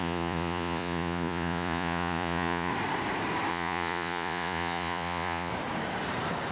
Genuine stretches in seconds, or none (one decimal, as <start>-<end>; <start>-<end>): 2.7-3.5; 5.5-6.5